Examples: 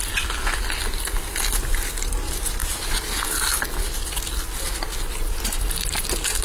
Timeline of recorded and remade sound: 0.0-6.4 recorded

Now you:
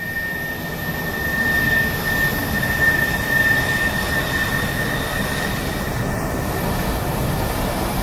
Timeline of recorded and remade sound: 0.0-2.4 recorded; 2.4-5.9 remade; 5.9-8.0 recorded